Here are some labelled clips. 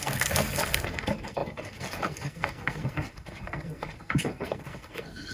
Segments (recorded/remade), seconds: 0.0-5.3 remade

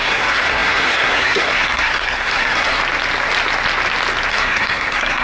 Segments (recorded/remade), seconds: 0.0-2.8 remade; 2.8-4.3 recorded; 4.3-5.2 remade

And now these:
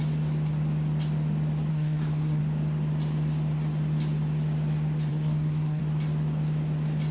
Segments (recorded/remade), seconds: 0.0-1.7 recorded; 1.7-2.4 remade; 2.4-5.1 recorded; 5.1-5.8 remade; 5.8-7.1 recorded

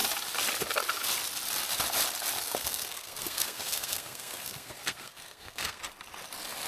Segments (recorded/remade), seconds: 0.0-2.4 recorded; 2.4-5.8 remade; 5.8-6.7 recorded

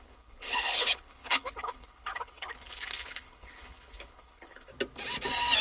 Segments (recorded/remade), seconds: 0.0-4.7 remade; 4.7-5.6 recorded

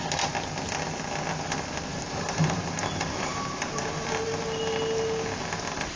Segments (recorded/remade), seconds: 0.0-1.9 recorded; 1.9-4.1 remade; 4.1-6.0 recorded